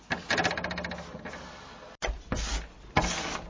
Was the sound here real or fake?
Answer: real